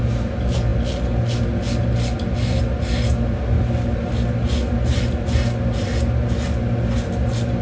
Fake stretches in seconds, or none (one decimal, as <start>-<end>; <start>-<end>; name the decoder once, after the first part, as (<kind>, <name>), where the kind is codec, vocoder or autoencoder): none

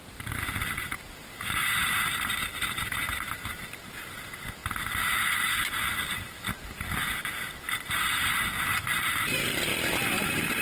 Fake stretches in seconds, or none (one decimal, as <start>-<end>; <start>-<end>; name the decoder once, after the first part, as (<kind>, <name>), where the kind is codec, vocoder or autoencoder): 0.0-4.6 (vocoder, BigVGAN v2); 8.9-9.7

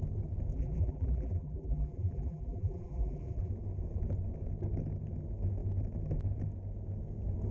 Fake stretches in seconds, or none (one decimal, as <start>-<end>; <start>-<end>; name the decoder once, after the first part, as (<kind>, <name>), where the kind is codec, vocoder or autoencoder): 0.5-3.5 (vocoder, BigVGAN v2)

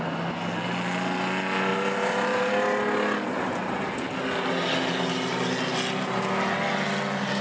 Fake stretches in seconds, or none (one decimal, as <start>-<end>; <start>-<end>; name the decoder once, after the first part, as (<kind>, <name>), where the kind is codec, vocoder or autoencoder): 1.7-2.5 (vocoder, BigVGAN v2)

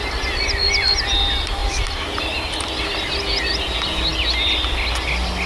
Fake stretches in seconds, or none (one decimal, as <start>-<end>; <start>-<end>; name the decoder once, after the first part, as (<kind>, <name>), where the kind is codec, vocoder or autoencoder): 1.6-2.9 (vocoder, BigVGAN v2)